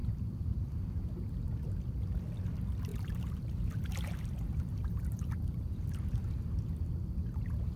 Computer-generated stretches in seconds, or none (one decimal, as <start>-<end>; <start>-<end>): 0.0-1.1; 2.9-6.4